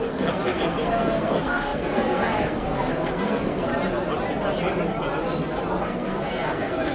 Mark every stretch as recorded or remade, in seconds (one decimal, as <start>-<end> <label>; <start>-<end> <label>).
0.0-3.7 remade; 3.7-5.8 recorded; 5.8-6.9 remade